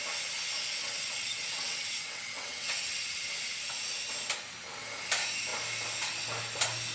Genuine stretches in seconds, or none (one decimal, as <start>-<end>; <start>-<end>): 0.0-0.8; 3.3-6.9